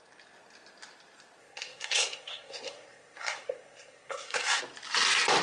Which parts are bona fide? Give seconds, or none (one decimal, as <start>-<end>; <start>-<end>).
0.0-1.4; 4.6-5.4